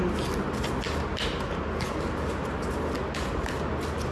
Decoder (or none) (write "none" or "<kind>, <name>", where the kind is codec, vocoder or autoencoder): none